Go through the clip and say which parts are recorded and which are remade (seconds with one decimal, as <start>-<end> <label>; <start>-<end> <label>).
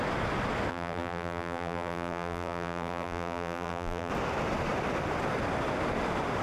0.0-0.7 recorded; 0.7-4.1 remade; 4.1-6.4 recorded